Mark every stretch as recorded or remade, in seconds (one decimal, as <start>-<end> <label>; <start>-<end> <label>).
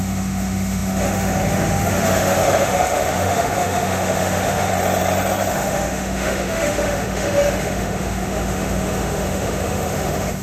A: 0.0-4.7 remade; 4.7-5.5 recorded; 5.5-10.4 remade